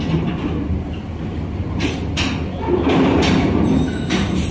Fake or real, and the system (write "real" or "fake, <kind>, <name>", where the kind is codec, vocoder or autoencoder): real